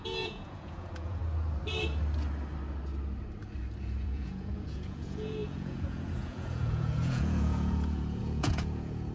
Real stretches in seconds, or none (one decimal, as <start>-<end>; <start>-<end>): 1.2-3.8